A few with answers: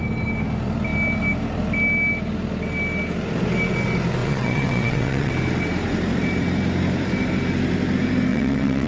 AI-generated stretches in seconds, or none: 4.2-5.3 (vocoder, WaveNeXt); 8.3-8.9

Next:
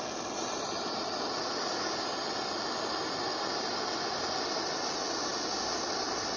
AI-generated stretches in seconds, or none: none

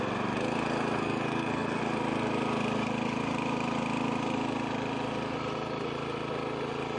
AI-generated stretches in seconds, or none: 1.0-1.8 (codec, SNAC)

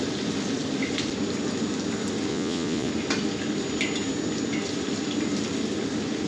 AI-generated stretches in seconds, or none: 2.3-2.9 (vocoder, Vocos)